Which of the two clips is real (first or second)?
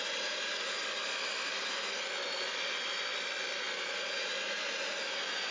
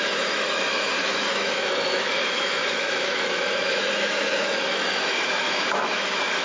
first